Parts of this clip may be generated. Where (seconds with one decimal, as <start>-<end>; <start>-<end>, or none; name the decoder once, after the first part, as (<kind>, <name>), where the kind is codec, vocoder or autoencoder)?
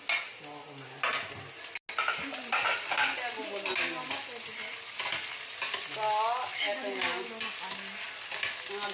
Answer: none